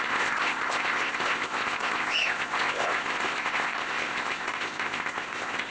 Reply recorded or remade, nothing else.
remade